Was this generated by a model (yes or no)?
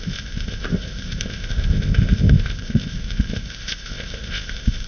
yes